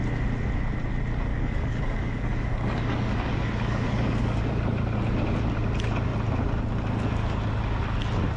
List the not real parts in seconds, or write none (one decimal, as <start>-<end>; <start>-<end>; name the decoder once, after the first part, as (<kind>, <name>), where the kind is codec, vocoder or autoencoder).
1.3-4.4 (codec, DAC)

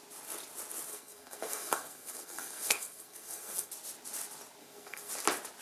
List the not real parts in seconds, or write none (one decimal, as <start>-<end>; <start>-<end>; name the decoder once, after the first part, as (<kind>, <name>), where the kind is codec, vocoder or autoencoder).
0.9-3.7 (codec, SNAC); 4.6-5.1